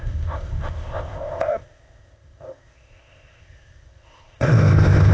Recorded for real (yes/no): no